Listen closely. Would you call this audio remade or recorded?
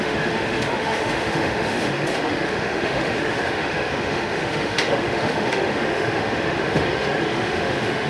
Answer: remade